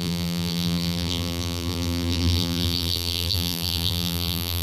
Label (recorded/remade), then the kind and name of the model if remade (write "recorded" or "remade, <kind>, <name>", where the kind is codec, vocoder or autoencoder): remade, vocoder, BigVGAN v2